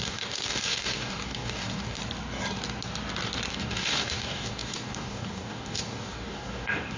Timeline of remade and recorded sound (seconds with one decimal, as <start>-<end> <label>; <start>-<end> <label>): 0.0-2.0 remade; 2.0-3.5 recorded; 3.5-7.0 remade